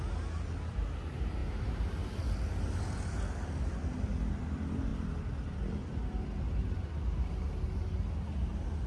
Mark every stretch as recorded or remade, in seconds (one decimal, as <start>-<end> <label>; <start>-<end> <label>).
0.0-8.9 recorded